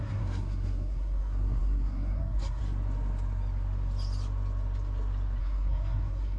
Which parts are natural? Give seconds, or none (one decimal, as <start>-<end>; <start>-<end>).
2.6-5.4